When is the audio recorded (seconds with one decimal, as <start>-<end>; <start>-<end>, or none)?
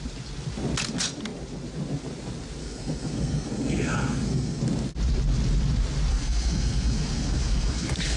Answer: 0.0-2.6; 4.6-6.1